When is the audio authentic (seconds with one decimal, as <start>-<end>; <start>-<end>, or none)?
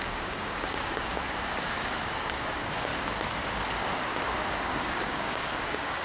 1.2-2.1; 2.9-4.7